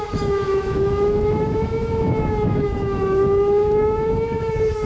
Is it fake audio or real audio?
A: fake